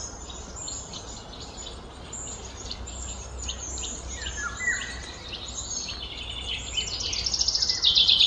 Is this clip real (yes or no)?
yes